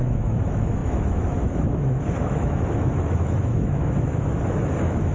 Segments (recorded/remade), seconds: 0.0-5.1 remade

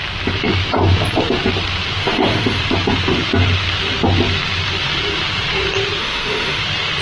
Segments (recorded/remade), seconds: 0.0-2.0 recorded; 2.0-2.6 remade; 2.6-6.0 recorded; 6.0-6.6 remade; 6.6-7.0 recorded